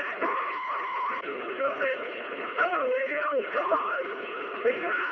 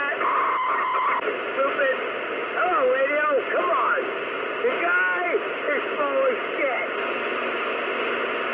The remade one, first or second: first